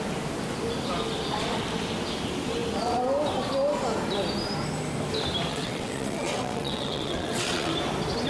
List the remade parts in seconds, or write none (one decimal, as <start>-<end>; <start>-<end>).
5.5-7.7